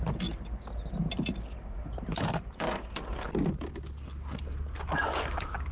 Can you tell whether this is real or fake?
real